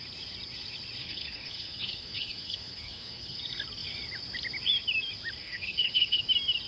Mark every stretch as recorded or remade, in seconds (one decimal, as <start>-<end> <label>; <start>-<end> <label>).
0.0-1.0 recorded; 1.0-3.4 remade; 3.4-5.4 recorded; 5.4-6.2 remade; 6.2-6.7 recorded